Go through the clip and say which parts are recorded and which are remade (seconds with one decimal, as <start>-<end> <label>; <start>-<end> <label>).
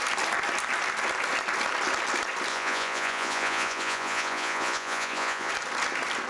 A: 0.0-2.5 recorded; 2.5-5.5 remade; 5.5-6.3 recorded